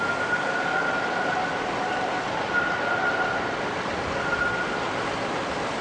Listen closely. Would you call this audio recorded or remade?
recorded